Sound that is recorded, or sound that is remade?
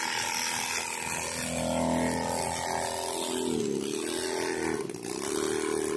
recorded